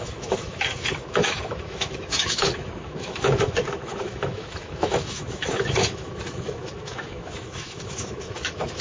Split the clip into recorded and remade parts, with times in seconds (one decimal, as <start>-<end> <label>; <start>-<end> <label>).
0.0-8.8 remade